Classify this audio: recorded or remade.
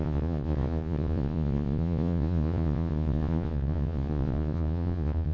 remade